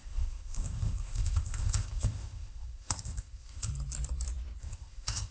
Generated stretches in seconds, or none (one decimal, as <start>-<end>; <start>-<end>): 0.0-3.7; 4.6-5.3

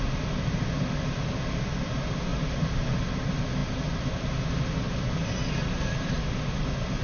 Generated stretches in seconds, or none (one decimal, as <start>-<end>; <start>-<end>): 2.3-2.8

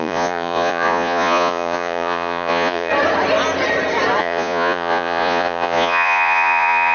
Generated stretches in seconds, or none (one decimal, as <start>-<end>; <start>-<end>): 0.0-2.9; 4.2-6.9

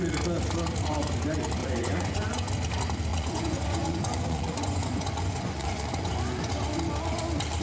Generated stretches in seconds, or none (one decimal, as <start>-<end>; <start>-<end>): 1.6-2.5; 3.1-6.2

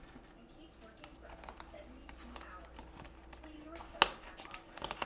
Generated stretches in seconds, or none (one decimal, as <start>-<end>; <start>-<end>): none

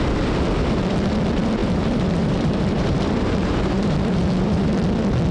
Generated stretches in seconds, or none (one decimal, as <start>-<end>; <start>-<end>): 1.6-4.7

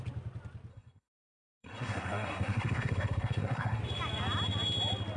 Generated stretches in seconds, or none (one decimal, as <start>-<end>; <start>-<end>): 0.7-3.8

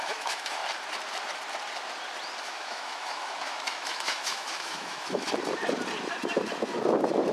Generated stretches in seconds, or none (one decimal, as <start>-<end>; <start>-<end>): 0.0-0.6; 2.4-5.3